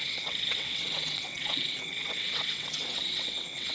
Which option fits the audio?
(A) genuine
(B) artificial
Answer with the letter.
B